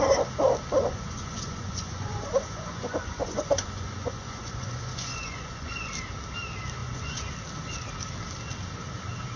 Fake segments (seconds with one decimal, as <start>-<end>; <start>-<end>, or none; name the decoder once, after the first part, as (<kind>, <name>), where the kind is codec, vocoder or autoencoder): 0.8-5.9 (vocoder, Vocos); 6.8-7.3